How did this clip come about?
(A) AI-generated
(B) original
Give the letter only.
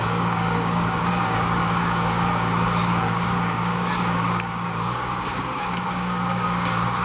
A